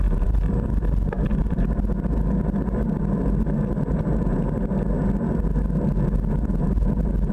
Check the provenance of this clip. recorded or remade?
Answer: recorded